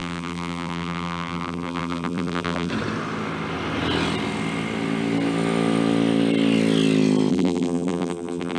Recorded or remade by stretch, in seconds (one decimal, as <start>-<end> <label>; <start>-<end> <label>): 0.0-2.7 remade; 2.7-7.3 recorded; 7.3-8.6 remade